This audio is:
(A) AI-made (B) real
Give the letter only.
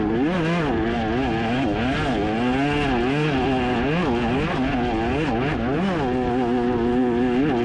B